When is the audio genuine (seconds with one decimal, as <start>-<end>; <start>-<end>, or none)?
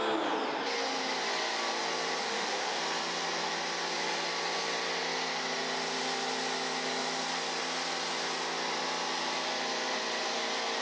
0.0-2.2; 2.8-10.8